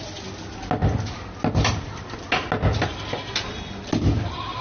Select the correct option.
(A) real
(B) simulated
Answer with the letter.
A